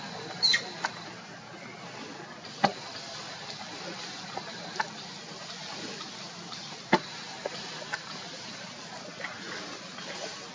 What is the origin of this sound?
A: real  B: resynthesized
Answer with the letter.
A